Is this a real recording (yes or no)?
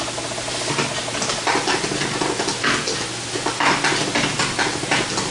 yes